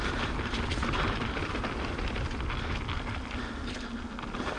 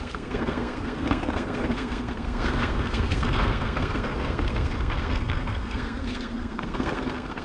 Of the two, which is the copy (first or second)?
second